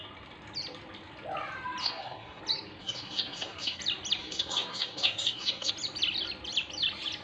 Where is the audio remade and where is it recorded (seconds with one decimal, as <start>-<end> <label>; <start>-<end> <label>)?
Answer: 0.0-1.8 recorded; 1.8-2.4 remade; 2.4-2.8 recorded; 2.8-3.8 remade; 3.8-4.2 recorded; 4.2-5.7 remade; 5.7-7.2 recorded